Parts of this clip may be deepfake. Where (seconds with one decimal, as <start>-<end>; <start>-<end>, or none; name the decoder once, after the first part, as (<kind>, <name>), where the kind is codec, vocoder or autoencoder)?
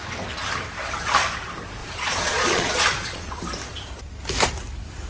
1.8-3.4 (vocoder, Vocos)